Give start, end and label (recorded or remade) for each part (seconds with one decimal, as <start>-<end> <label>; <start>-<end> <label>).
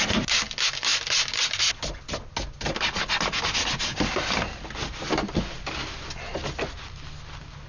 0.0-7.7 recorded